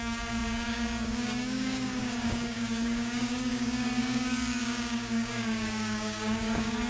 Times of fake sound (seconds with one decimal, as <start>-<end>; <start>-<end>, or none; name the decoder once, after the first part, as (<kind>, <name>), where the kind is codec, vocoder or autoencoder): 0.0-6.9 (codec, DAC)